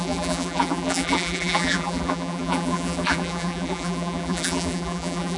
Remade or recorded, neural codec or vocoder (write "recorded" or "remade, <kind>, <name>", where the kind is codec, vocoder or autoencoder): remade, vocoder, BigVGAN v2